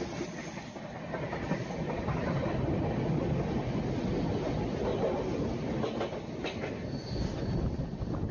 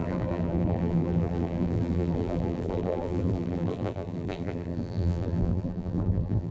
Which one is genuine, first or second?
first